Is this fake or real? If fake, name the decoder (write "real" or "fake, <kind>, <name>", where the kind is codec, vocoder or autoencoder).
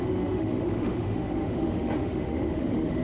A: fake, autoencoder, DAC-VAE